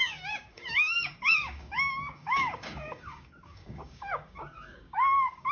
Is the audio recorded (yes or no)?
no